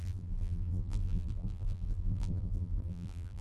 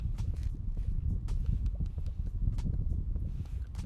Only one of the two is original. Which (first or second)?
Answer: second